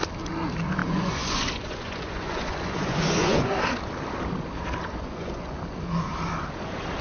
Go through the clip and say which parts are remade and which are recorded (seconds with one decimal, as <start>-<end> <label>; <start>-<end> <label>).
0.0-0.8 recorded; 0.8-3.5 remade; 3.5-4.8 recorded; 4.8-5.6 remade; 5.6-7.0 recorded